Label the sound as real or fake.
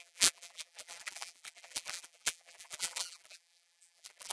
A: fake